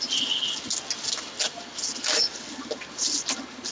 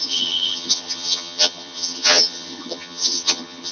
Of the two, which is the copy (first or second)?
second